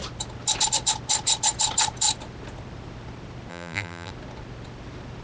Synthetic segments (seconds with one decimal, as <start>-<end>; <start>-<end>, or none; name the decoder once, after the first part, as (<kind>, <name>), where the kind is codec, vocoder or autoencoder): 3.5-4.1 (vocoder, BigVGAN v2)